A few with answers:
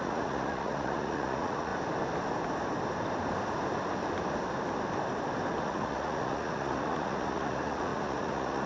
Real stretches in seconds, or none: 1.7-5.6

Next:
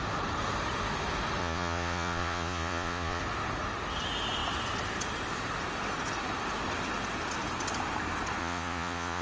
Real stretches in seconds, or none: 0.0-1.4; 3.2-8.4